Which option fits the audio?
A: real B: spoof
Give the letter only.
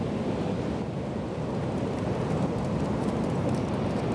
A